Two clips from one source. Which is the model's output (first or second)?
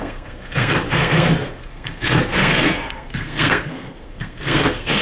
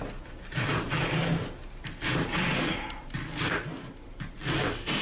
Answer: first